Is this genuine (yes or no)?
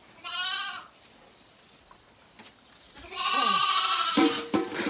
yes